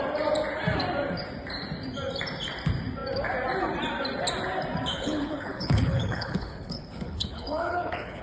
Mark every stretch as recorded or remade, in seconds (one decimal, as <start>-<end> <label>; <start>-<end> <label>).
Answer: 0.0-4.9 recorded; 4.9-8.2 remade

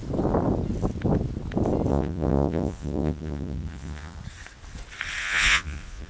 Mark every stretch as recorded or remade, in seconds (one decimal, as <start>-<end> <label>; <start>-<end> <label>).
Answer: 0.0-1.9 recorded; 1.9-4.2 remade; 4.2-5.2 recorded; 5.2-6.1 remade

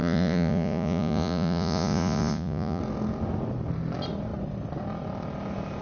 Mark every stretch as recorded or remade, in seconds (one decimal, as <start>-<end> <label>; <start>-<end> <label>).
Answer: 0.0-2.8 remade; 2.8-5.8 recorded